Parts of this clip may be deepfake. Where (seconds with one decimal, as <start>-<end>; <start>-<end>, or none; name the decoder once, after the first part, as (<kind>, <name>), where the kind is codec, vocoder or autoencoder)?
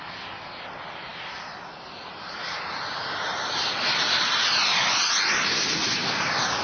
none